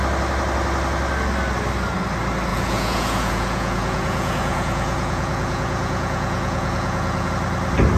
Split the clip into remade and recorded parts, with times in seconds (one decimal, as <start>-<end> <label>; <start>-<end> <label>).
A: 0.0-2.5 recorded; 2.5-7.3 remade; 7.3-8.0 recorded